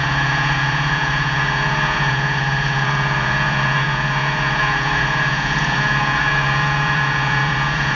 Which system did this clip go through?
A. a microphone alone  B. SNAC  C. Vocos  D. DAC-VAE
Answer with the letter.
C